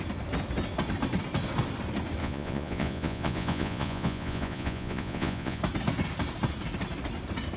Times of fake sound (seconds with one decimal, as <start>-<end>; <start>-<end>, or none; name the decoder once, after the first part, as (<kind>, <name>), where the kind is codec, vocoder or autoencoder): 2.2-5.6 (vocoder, Vocos)